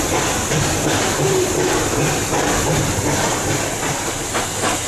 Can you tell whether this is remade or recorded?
remade